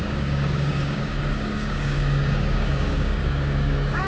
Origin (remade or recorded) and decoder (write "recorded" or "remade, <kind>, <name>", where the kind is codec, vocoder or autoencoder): remade, codec, DAC